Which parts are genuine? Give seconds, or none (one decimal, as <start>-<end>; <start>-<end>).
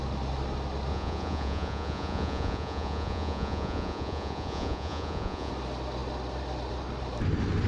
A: 0.0-0.9; 5.5-7.7